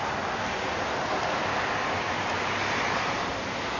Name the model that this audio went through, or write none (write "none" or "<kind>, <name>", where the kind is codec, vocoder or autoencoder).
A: none